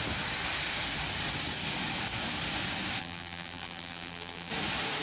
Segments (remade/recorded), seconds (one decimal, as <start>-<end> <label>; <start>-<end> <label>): 0.0-3.0 recorded; 3.0-4.5 remade; 4.5-5.0 recorded